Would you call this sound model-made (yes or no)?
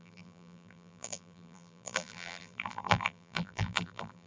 yes